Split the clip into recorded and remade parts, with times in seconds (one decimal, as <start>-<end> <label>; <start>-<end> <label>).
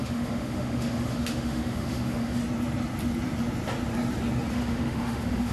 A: 0.0-2.4 remade; 2.4-4.5 recorded; 4.5-5.5 remade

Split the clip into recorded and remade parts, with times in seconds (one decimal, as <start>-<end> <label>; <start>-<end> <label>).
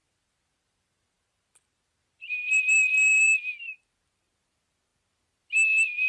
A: 0.0-3.6 remade; 3.6-6.1 recorded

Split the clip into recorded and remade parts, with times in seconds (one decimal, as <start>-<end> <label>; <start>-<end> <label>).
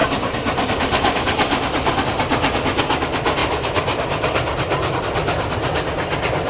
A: 0.0-2.0 remade; 2.0-3.4 recorded; 3.4-5.0 remade; 5.0-6.5 recorded